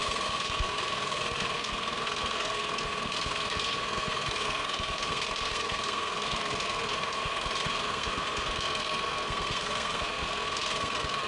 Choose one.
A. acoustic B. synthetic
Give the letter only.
B